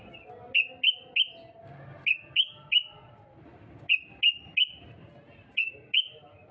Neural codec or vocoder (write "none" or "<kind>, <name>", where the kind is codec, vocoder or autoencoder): none